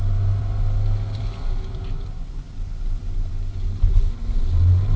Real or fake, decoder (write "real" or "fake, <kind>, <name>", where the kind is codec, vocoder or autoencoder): real